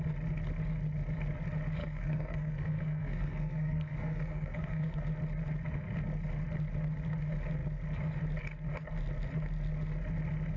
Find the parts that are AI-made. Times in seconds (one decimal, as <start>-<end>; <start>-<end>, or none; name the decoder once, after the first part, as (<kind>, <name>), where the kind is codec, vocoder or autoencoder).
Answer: 1.8-5.0 (codec, SNAC)